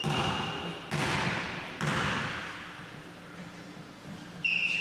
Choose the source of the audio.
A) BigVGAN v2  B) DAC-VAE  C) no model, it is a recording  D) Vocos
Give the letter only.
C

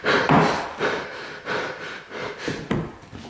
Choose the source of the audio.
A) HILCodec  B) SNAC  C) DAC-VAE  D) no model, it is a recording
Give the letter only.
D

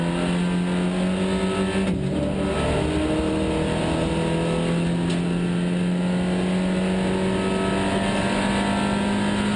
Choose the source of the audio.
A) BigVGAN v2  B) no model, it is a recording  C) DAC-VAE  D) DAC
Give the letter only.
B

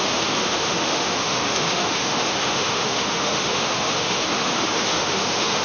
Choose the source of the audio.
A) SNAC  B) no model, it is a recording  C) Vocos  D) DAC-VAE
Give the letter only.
D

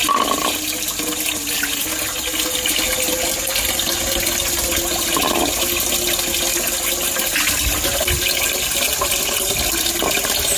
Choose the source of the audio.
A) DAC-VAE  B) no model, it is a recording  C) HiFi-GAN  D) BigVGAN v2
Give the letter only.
B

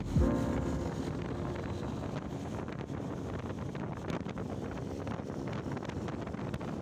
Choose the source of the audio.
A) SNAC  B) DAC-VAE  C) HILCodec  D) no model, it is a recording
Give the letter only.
D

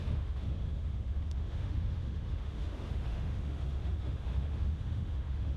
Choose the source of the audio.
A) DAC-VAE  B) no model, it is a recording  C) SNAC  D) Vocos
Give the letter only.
A